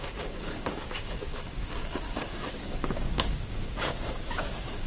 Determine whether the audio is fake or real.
fake